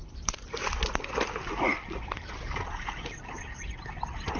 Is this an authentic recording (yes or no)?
yes